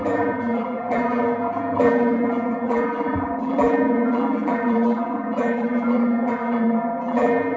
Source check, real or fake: fake